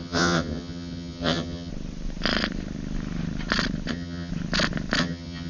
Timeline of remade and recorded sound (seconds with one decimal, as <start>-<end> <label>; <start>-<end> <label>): 0.0-1.7 remade; 1.7-3.9 recorded; 3.9-4.3 remade; 4.3-5.0 recorded; 5.0-5.5 remade